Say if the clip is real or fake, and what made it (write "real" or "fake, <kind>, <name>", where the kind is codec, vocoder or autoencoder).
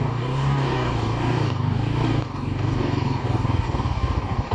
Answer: fake, codec, DAC